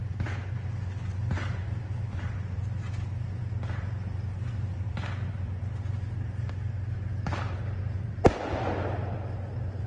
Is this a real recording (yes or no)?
yes